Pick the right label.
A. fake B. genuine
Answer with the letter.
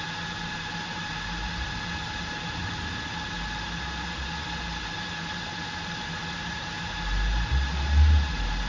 B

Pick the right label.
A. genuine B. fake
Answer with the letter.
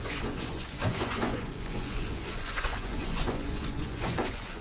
B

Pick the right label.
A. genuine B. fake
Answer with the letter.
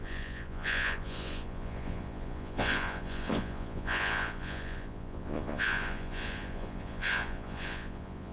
B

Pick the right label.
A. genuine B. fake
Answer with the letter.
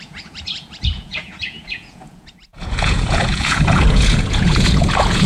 B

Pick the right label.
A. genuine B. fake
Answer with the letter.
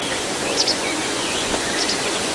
B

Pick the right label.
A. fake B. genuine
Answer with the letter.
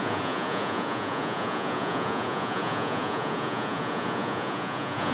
A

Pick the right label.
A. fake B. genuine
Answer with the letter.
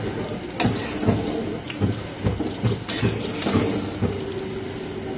B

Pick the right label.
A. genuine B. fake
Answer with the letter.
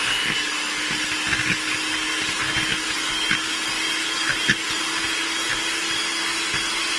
A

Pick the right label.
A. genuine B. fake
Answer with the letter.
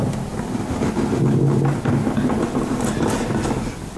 A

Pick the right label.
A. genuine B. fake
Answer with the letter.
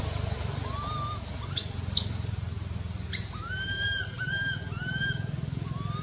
A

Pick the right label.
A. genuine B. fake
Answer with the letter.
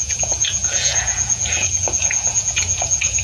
B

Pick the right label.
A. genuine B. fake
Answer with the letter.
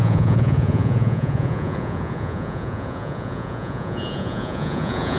B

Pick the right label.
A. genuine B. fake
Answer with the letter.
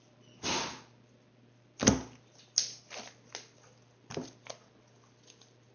A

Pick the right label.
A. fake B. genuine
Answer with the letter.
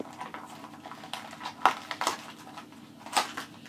B